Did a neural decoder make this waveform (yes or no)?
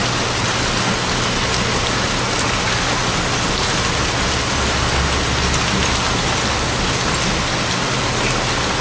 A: no